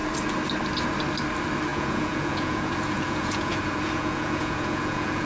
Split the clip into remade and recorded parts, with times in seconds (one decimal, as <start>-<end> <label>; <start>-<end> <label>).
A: 0.0-1.7 recorded; 1.7-5.3 remade